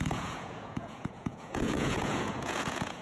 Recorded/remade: remade